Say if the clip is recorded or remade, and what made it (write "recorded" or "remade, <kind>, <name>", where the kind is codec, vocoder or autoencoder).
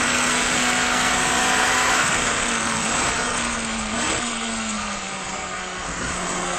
remade, codec, SNAC